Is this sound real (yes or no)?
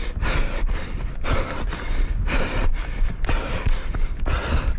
no